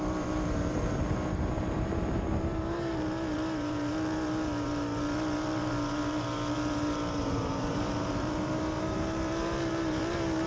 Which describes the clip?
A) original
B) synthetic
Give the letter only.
B